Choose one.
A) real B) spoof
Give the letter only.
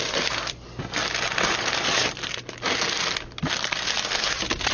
A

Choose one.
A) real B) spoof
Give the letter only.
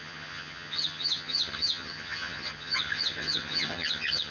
B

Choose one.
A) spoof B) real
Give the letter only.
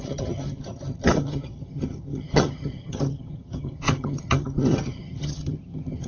A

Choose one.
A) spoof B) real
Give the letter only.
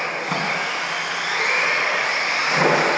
B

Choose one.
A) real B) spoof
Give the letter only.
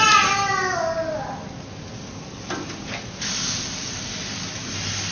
A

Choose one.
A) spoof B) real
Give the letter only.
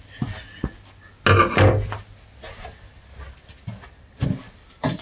B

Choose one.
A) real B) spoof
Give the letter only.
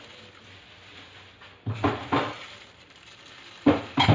A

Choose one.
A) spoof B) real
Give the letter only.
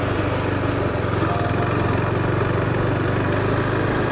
B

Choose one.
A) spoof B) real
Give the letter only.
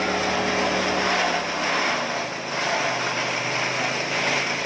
B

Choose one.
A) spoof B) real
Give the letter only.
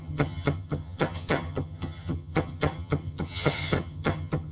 A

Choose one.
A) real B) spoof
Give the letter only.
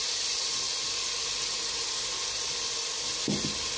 A